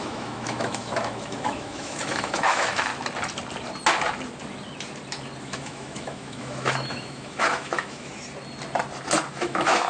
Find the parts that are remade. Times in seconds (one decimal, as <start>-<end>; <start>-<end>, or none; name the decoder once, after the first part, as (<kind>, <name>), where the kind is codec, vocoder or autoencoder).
0.0-2.9 (autoencoder, DAC-VAE); 5.4-8.1; 9.3-9.9